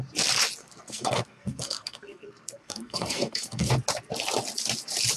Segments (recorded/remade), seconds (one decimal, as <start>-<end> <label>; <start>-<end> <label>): 0.0-0.6 recorded; 0.6-3.7 remade; 3.7-5.2 recorded